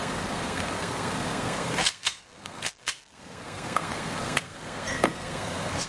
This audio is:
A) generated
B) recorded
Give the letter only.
A